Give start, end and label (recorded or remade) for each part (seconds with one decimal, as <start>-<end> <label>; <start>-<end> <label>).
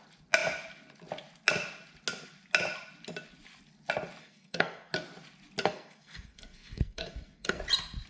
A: 0.0-4.2 recorded; 4.2-4.9 remade; 4.9-5.6 recorded; 5.6-7.6 remade; 7.6-8.1 recorded